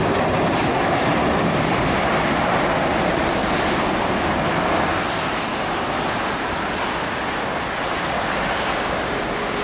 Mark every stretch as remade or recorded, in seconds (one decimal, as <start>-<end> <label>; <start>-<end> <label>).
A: 0.0-9.6 recorded